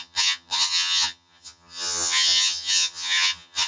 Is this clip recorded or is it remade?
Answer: remade